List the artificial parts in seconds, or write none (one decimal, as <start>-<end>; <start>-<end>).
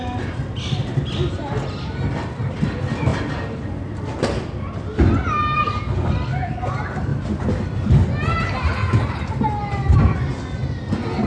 none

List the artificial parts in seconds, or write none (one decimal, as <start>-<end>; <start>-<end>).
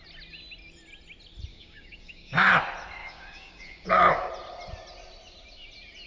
1.5-2.5; 3.0-4.3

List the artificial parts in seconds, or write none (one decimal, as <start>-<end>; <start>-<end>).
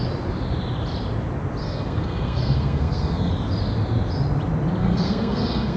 1.6-3.3; 4.8-5.8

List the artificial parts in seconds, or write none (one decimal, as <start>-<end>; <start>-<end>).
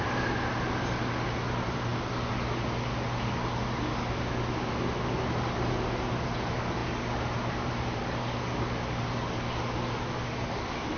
none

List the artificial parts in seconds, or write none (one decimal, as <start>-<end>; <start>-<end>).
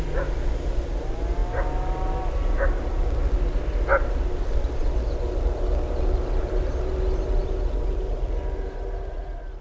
none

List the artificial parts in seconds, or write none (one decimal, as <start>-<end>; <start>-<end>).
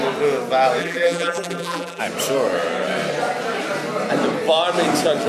0.8-2.0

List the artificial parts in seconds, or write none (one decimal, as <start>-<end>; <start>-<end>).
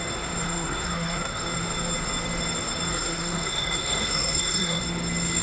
0.5-1.4; 2.9-4.8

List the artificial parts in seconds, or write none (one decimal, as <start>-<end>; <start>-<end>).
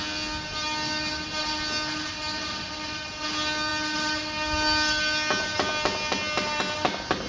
none